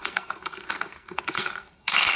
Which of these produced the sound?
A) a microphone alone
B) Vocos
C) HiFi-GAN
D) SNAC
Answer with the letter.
D